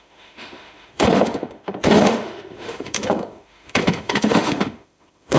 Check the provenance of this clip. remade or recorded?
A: remade